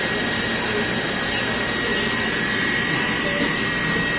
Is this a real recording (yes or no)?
yes